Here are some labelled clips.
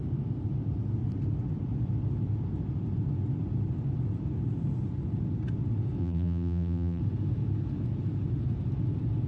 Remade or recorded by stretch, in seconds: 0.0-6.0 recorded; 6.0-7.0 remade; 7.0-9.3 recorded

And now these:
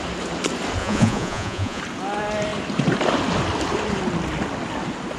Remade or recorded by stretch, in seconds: 0.0-0.8 recorded; 0.8-1.8 remade; 1.8-5.2 recorded